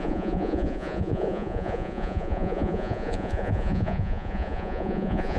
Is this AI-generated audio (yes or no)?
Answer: yes